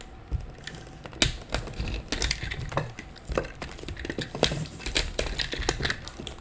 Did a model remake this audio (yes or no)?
no